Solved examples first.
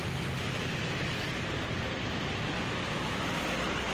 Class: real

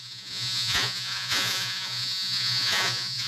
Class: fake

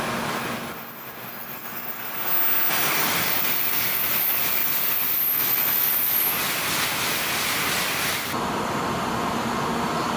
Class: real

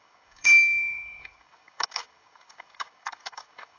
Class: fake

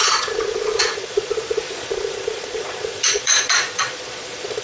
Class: fake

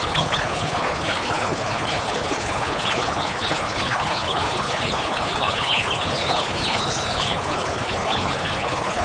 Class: fake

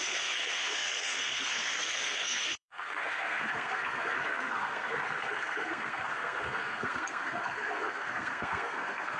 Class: fake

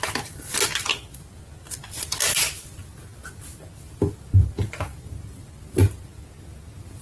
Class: real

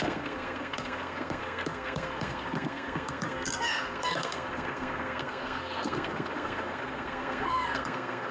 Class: fake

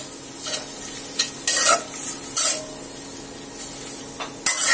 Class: real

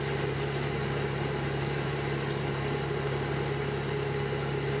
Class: fake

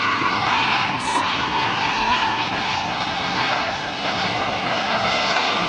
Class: fake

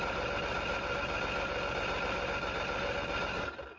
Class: real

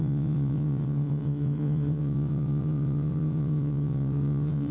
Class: fake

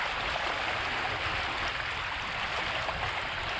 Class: real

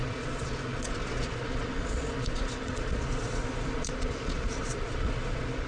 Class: fake